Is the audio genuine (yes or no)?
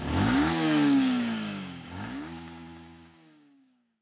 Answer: no